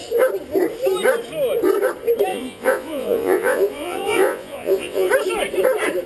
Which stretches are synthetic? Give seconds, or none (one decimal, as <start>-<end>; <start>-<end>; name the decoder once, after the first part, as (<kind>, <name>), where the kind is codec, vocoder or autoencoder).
2.3-5.1 (vocoder, Vocos)